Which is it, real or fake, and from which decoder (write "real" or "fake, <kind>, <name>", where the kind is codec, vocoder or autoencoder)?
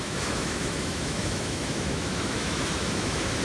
fake, autoencoder, DAC-VAE